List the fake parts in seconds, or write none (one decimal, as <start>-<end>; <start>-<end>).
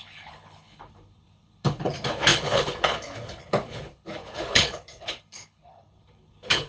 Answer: 0.0-6.7